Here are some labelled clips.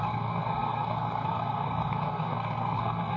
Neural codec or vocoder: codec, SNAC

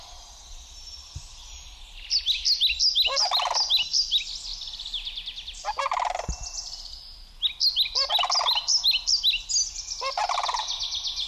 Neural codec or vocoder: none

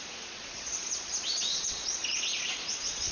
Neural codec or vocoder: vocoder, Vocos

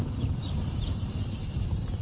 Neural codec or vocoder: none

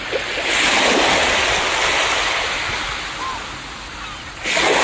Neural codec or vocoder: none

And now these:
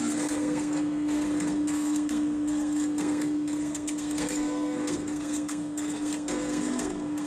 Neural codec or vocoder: codec, SNAC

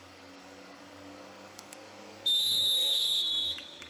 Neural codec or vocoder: codec, DAC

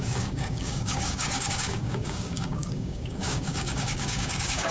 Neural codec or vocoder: codec, DAC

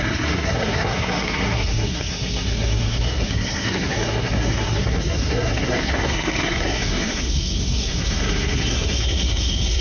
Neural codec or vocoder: codec, SNAC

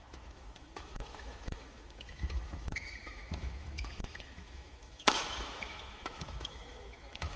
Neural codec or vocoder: autoencoder, DAC-VAE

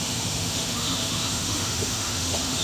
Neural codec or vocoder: autoencoder, DAC-VAE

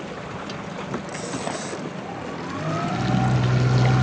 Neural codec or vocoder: none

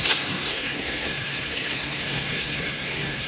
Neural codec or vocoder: codec, SNAC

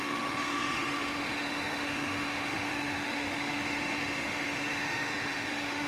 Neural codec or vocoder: autoencoder, DAC-VAE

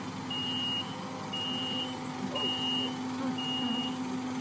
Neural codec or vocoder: none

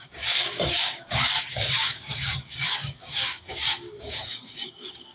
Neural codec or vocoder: codec, DAC